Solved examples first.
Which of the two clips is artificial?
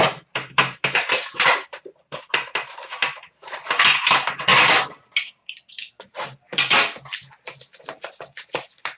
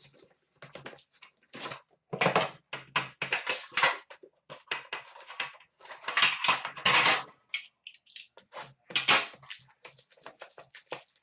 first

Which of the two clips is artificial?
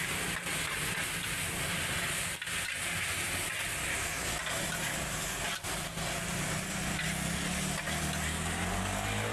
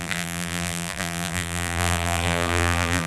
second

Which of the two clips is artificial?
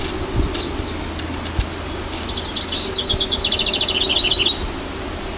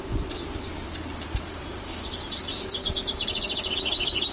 second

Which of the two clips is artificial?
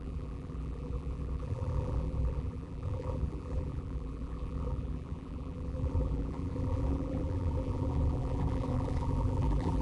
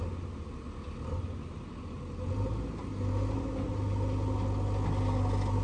first